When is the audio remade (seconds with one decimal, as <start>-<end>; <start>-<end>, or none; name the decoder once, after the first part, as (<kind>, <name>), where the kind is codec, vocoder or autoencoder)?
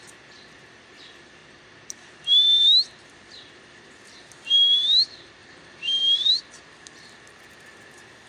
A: 5.4-6.0 (vocoder, BigVGAN v2)